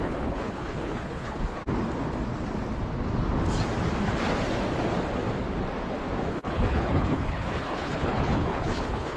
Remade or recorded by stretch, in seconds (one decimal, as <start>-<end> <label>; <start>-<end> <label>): 0.0-1.6 remade; 1.6-6.3 recorded; 6.3-9.2 remade